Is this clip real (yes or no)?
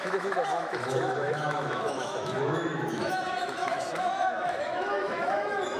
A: no